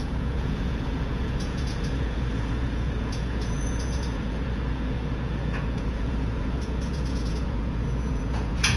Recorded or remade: remade